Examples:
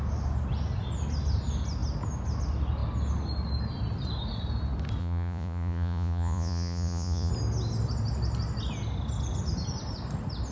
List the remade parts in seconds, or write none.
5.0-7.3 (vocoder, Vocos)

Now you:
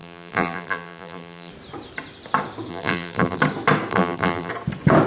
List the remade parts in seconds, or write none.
0.0-1.5 (vocoder, BigVGAN v2); 2.7-3.4; 3.9-4.5